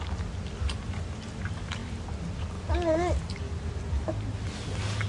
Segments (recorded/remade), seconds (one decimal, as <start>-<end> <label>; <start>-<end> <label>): 0.0-5.1 recorded